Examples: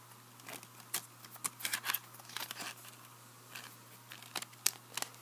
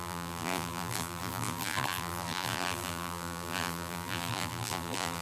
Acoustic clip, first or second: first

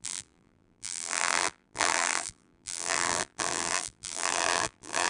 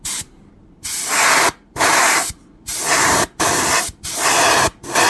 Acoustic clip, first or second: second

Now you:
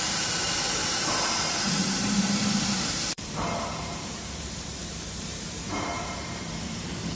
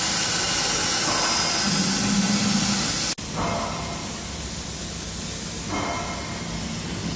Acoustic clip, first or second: second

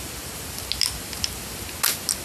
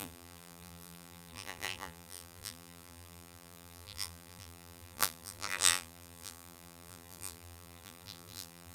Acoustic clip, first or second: first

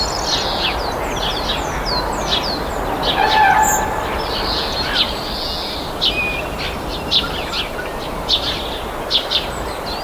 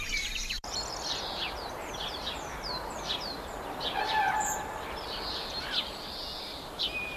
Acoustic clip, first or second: first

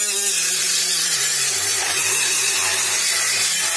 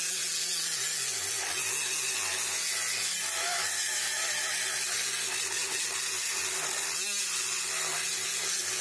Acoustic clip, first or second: second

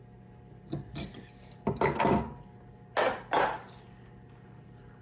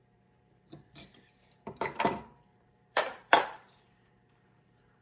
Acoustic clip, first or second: first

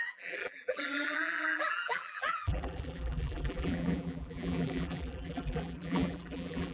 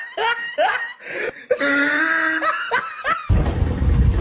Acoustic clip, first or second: second